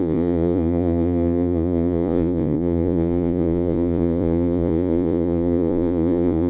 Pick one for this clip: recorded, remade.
remade